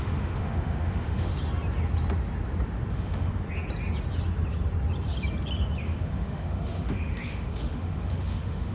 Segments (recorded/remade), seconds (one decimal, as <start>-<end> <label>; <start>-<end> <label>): 0.0-1.3 remade; 1.3-2.9 recorded; 2.9-3.3 remade; 3.3-5.8 recorded; 5.8-8.7 remade

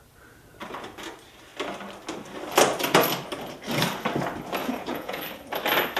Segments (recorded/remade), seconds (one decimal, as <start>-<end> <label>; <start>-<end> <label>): 0.0-4.6 recorded; 4.6-5.2 remade; 5.2-6.0 recorded

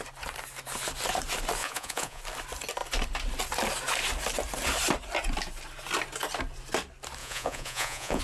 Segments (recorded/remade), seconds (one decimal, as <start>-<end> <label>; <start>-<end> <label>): 0.0-1.6 recorded; 1.6-2.2 remade; 2.2-7.2 recorded; 7.2-8.2 remade

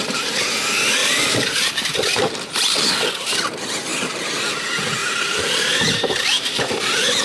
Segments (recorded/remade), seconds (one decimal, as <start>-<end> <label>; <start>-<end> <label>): 0.0-1.0 recorded; 1.0-2.9 remade; 2.9-3.9 recorded; 3.9-4.6 remade; 4.6-5.0 recorded; 5.0-6.6 remade; 6.6-7.2 recorded

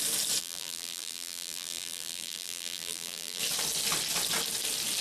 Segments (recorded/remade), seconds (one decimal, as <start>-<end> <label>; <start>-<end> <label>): 0.0-0.4 recorded; 0.4-3.4 remade; 3.4-5.0 recorded

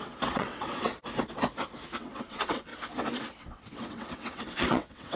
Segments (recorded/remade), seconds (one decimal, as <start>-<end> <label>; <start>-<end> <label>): 0.0-0.9 remade; 0.9-2.0 recorded; 2.0-2.7 remade; 2.7-3.4 recorded; 3.4-5.2 remade